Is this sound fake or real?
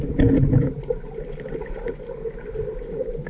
real